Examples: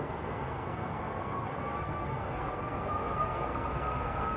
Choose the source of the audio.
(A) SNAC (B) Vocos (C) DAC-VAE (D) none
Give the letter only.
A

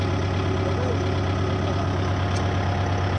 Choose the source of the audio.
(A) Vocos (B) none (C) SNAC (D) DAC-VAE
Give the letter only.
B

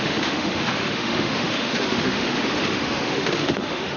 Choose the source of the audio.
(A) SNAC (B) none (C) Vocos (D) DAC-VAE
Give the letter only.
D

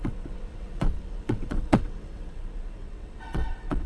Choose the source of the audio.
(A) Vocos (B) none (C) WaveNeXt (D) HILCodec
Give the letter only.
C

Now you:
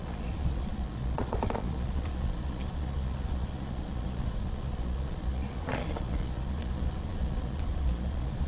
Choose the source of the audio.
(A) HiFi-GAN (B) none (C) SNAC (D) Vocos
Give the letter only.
D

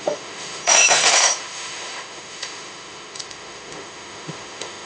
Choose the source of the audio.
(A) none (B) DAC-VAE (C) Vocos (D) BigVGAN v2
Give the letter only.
B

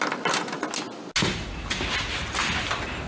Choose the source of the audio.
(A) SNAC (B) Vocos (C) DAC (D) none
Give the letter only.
D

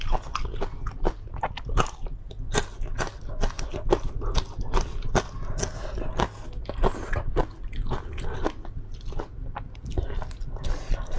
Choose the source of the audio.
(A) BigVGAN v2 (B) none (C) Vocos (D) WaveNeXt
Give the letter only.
B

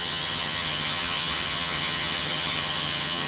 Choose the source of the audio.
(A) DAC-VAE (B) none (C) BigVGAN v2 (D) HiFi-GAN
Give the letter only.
D